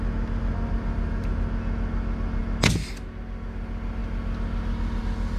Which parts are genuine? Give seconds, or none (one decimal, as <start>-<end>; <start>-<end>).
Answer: 0.0-5.4

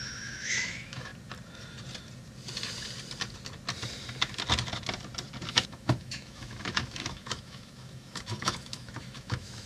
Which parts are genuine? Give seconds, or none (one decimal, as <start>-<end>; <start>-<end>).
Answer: 1.1-5.5